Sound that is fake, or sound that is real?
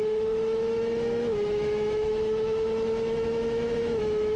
fake